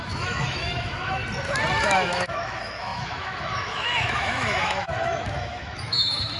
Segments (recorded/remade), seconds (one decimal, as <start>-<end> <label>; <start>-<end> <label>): 0.0-1.2 remade; 1.2-1.8 recorded; 1.8-6.4 remade